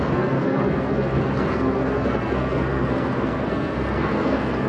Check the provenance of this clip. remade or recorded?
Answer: remade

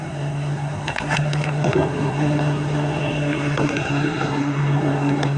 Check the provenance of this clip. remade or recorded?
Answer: remade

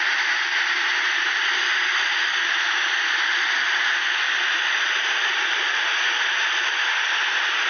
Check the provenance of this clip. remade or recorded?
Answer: recorded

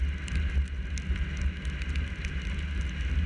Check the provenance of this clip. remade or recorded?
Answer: recorded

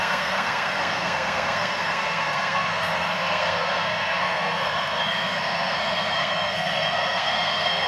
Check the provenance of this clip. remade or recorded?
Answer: remade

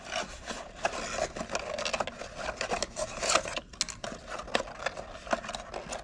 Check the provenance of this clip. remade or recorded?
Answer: recorded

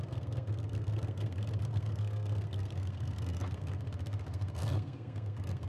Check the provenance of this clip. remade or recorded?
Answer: remade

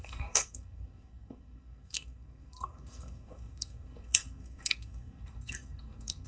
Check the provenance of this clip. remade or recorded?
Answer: remade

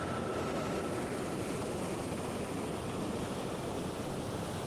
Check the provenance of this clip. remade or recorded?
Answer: recorded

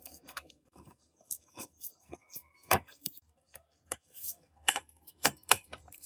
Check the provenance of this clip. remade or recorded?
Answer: remade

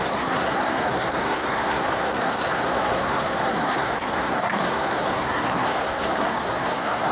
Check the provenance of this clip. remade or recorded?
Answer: remade